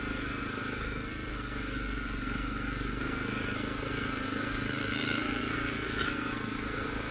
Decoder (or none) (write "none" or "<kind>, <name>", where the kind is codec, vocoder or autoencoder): codec, SNAC